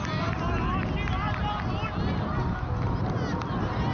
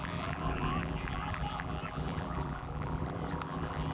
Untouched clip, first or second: first